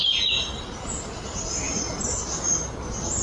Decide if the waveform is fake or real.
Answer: real